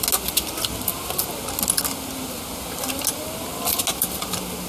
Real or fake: real